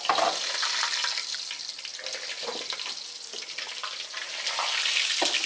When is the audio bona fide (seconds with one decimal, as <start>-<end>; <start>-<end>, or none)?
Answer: 0.0-5.5